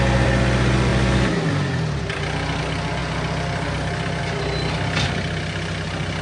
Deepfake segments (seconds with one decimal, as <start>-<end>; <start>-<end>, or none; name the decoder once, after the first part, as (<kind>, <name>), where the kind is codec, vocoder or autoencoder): none